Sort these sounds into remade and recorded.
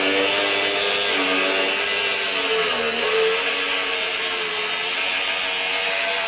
recorded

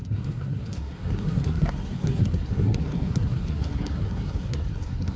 remade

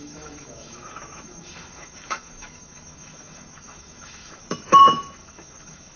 remade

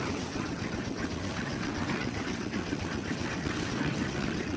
remade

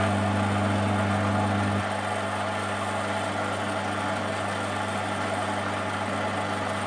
recorded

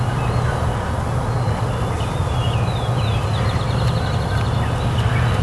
recorded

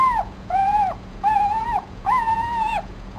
remade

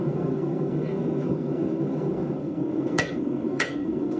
remade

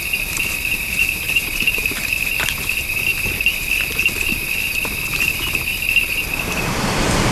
remade